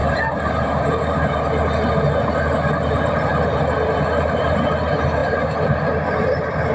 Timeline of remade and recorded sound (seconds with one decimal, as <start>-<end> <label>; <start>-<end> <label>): 0.0-1.4 remade; 1.4-6.7 recorded